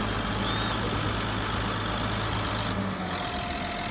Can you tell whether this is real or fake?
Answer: real